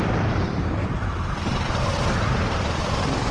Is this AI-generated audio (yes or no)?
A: yes